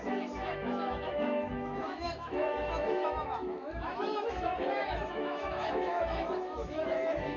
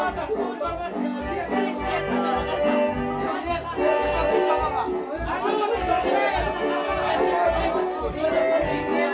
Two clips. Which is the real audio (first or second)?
second